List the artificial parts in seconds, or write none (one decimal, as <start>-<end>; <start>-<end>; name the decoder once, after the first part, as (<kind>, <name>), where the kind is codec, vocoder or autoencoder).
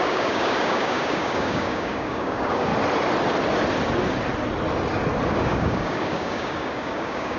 0.0-2.7 (codec, DAC); 5.3-7.4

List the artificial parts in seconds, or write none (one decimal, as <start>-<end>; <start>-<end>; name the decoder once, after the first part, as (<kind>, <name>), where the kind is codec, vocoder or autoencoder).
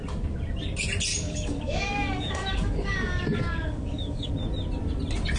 1.1-4.3 (codec, DAC)